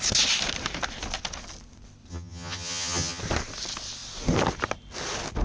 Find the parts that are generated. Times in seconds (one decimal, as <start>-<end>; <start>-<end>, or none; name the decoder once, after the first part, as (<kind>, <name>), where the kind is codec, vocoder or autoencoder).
2.1-3.2 (vocoder, HiFi-GAN)